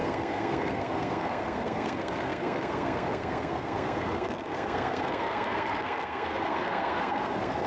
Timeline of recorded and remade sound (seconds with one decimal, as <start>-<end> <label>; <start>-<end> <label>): 0.0-7.7 remade